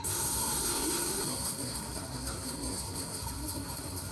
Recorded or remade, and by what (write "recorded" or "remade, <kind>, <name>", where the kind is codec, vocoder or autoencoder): remade, codec, SNAC